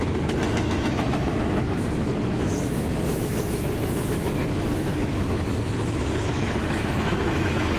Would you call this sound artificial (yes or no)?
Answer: yes